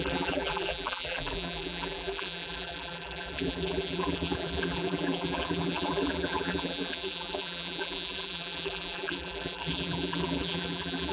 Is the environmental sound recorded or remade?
remade